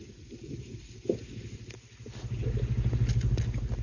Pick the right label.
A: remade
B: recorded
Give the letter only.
B